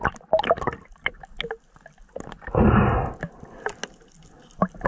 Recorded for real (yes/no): yes